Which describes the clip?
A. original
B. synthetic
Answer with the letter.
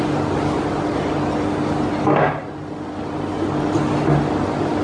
A